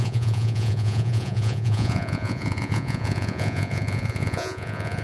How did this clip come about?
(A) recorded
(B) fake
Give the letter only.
B